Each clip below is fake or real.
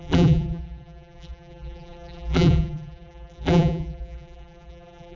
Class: fake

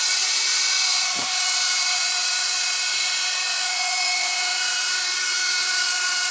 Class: fake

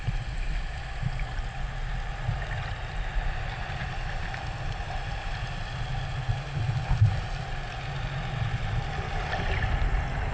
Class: real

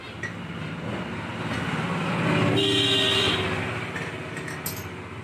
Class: real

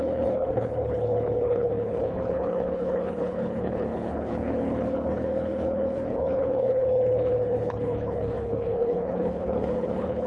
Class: fake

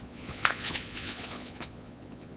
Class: fake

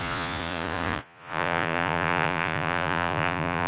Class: fake